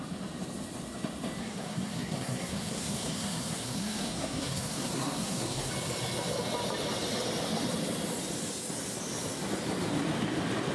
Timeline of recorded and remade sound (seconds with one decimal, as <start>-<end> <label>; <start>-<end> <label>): 0.0-1.4 recorded; 1.4-5.7 remade; 5.7-10.7 recorded